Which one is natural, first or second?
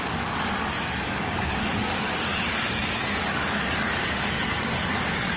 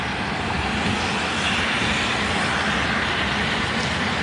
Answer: second